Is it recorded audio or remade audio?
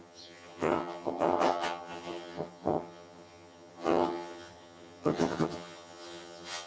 remade